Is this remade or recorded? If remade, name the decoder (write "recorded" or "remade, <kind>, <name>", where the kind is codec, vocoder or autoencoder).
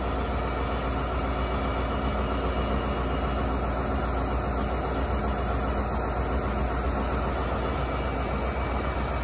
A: recorded